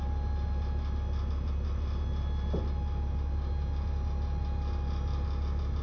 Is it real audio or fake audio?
real